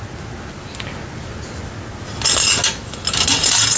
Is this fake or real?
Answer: real